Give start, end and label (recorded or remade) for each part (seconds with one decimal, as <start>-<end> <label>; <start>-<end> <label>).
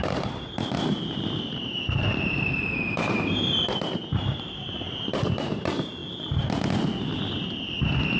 0.0-6.0 remade; 6.0-8.2 recorded